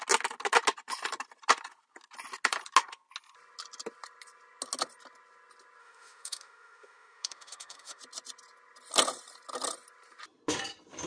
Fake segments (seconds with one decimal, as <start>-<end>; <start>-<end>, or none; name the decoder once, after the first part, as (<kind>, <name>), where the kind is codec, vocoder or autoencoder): 5.8-8.0 (autoencoder, DAC-VAE)